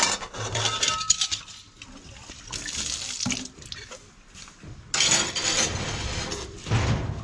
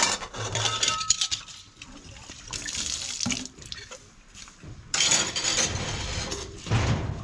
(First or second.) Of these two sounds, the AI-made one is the second